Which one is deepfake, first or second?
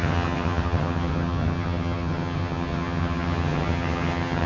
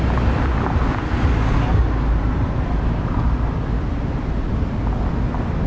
first